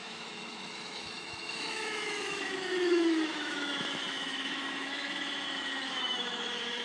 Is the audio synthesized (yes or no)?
yes